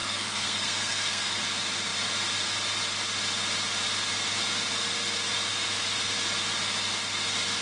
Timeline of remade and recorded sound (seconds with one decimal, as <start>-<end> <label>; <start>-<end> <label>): 0.0-1.4 remade; 1.4-7.6 recorded